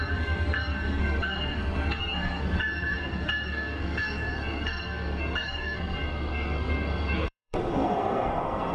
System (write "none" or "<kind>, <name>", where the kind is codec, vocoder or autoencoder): codec, SNAC